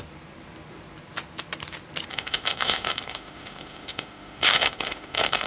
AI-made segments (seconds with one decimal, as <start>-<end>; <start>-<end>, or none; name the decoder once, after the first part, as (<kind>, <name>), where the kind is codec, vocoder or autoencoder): 2.1-5.5 (autoencoder, DAC-VAE)